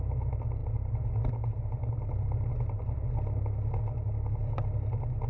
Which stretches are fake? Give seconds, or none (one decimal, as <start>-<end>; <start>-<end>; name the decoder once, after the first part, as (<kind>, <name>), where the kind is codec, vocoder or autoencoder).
none